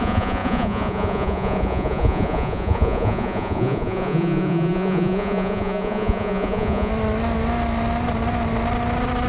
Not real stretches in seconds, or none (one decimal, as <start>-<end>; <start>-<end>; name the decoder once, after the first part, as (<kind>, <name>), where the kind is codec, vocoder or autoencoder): 0.0-6.9 (vocoder, Vocos)